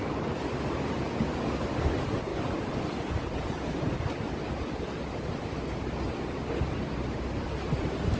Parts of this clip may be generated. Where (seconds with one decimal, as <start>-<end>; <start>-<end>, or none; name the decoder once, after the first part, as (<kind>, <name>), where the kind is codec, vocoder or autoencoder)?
0.0-2.3 (vocoder, BigVGAN v2); 7.2-8.2